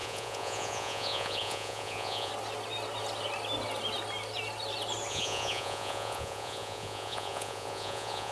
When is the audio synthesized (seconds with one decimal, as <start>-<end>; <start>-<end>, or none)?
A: 0.0-2.3; 5.1-8.3